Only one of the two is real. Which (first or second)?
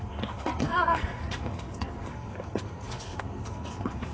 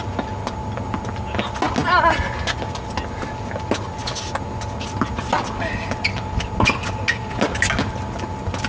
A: second